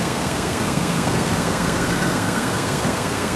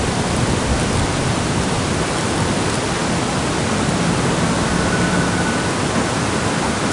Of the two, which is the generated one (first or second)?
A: first